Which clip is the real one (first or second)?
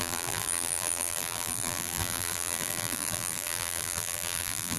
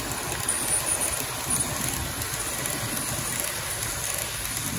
second